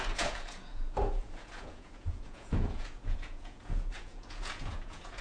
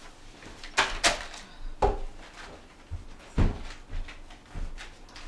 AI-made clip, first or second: first